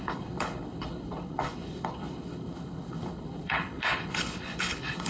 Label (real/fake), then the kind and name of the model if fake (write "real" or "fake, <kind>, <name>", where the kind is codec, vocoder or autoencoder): fake, codec, HILCodec